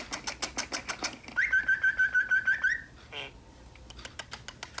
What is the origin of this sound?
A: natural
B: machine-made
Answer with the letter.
A